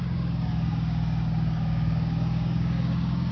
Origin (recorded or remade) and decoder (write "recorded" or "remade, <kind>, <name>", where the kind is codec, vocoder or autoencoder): remade, codec, DAC